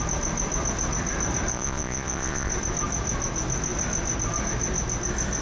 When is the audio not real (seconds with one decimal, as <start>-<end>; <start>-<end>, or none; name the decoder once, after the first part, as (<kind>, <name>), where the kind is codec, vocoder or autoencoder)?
1.5-2.5 (vocoder, Vocos)